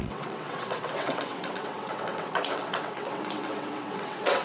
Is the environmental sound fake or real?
fake